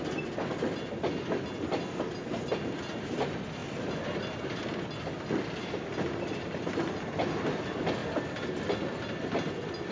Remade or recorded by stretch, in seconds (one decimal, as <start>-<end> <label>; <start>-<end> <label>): 0.0-9.9 recorded